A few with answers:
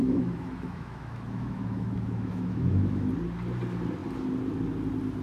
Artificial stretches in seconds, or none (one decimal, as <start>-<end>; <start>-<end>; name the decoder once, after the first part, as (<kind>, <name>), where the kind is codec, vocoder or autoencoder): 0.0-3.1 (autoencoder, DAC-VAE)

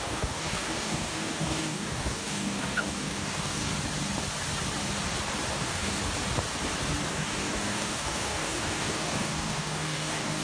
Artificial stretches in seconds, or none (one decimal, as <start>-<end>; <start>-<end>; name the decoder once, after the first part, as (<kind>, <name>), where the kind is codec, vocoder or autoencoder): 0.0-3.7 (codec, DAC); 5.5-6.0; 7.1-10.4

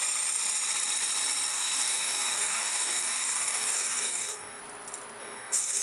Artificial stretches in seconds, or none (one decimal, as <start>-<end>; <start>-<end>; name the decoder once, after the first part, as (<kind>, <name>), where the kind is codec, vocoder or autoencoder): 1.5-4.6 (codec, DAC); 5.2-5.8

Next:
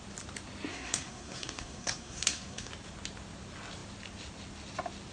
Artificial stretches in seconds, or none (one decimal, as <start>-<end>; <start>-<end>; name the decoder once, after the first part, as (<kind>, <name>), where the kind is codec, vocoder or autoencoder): 0.7-2.7 (codec, SNAC)

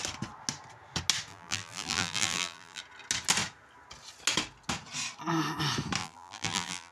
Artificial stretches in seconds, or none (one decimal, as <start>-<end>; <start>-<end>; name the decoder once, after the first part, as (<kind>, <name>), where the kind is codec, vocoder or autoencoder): 1.3-2.8 (vocoder, BigVGAN v2); 6.0-6.9

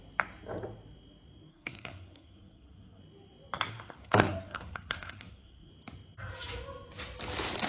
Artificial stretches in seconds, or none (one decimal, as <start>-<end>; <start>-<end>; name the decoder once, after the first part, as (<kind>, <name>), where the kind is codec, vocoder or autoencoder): 1.5-3.0 (codec, SNAC); 3.7-5.7

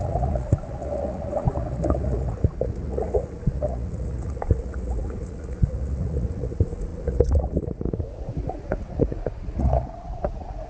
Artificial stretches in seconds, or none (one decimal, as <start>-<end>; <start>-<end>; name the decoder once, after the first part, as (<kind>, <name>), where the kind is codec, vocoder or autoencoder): 0.0-10.7 (vocoder, Vocos)